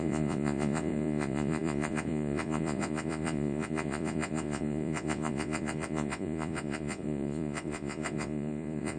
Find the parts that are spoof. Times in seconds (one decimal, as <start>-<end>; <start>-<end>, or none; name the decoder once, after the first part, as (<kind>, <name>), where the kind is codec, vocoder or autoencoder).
0.0-9.0 (vocoder, Vocos)